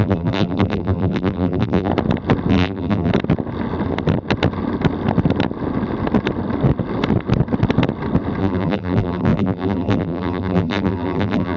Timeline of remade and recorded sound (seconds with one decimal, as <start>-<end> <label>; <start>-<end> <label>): 0.0-1.9 remade; 1.9-2.5 recorded; 2.5-3.1 remade; 3.1-8.4 recorded; 8.4-11.6 remade